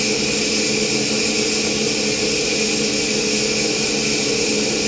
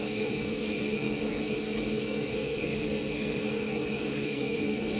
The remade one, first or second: second